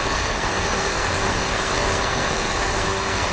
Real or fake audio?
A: fake